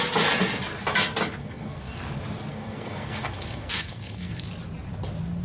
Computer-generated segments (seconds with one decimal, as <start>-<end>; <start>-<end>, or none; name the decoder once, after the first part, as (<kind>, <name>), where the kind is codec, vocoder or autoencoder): 1.4-2.0 (codec, SNAC); 2.5-4.5